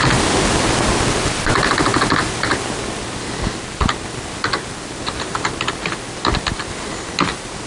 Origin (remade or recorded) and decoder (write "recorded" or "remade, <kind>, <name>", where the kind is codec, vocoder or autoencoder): recorded